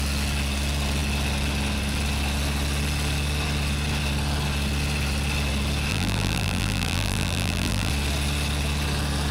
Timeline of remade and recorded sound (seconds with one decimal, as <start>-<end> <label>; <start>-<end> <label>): 0.0-5.9 recorded; 5.9-7.9 remade; 7.9-9.3 recorded